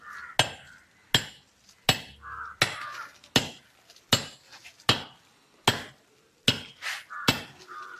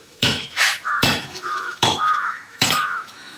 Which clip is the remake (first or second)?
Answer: second